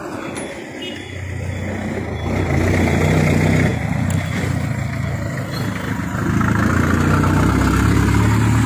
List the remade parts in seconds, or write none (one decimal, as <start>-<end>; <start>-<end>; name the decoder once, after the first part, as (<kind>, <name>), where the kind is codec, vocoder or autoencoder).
none